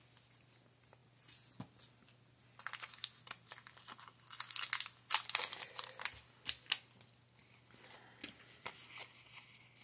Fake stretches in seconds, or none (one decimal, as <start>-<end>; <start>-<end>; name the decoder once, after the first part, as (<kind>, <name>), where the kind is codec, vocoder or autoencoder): none